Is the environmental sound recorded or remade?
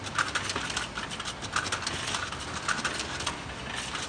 recorded